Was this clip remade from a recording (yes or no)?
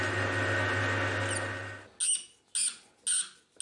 no